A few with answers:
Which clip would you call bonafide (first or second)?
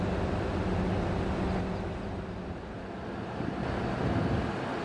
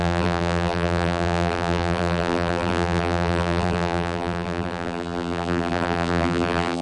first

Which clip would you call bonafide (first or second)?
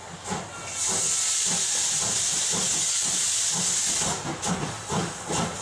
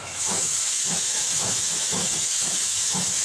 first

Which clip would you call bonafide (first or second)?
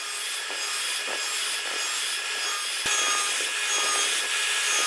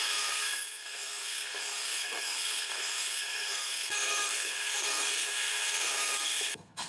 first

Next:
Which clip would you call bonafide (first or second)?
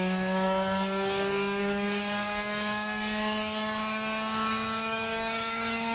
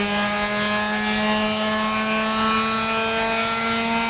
second